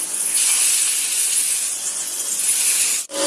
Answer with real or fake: fake